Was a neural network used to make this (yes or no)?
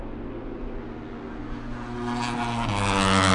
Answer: no